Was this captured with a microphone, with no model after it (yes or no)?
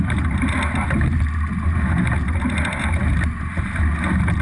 yes